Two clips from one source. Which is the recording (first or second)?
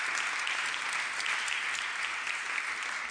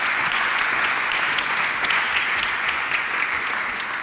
first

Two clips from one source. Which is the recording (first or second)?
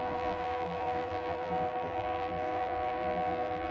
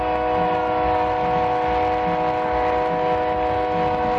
second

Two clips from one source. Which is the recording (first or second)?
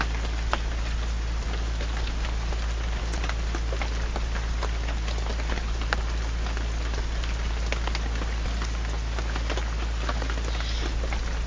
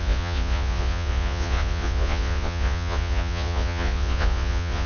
first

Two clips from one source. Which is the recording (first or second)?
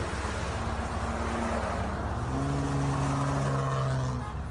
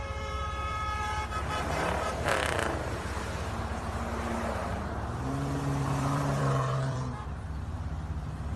first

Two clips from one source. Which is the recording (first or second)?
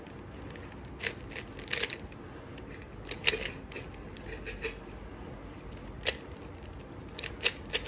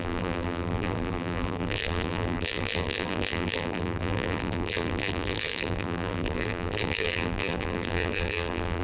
first